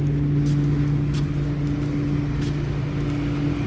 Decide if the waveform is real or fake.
real